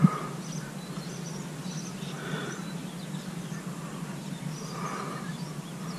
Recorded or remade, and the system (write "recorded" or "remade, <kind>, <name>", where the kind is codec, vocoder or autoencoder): recorded